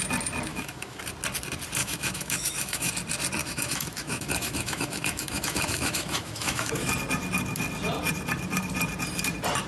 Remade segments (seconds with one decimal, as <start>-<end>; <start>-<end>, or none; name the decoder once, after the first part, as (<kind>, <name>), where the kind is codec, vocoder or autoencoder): 0.5-1.0 (autoencoder, DAC-VAE); 1.8-2.9; 3.4-6.9